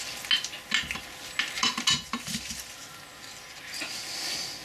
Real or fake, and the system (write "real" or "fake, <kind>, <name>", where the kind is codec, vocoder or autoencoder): real